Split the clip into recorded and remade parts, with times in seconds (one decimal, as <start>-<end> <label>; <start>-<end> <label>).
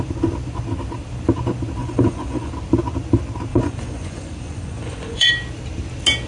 0.0-1.8 recorded; 1.8-2.5 remade; 2.5-3.5 recorded; 3.5-5.3 remade; 5.3-6.3 recorded